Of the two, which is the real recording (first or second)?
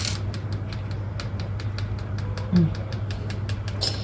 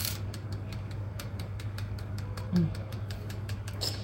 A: first